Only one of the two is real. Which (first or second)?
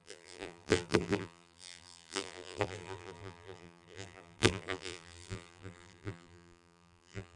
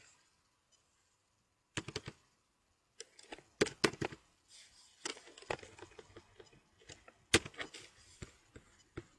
second